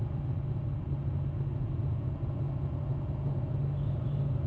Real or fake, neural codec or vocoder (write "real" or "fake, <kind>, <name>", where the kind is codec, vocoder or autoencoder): real